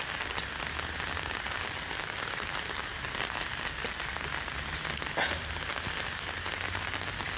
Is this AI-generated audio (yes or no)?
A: no